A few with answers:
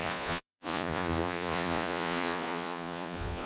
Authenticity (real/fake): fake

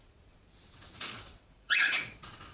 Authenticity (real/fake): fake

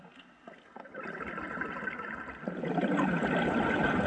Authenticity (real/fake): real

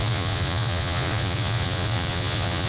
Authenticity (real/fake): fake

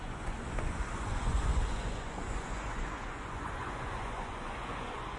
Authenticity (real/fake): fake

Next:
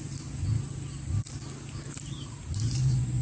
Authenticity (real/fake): real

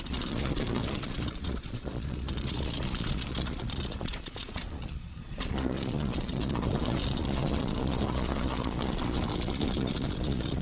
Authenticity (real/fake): fake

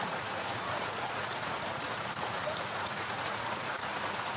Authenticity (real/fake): fake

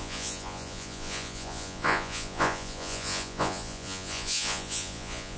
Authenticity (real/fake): fake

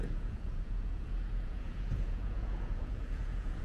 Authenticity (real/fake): fake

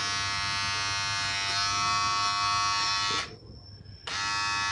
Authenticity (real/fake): real